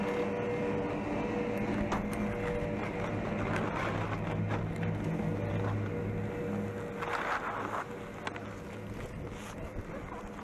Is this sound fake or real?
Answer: real